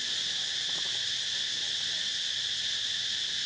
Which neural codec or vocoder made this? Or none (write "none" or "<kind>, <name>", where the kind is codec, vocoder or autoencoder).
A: none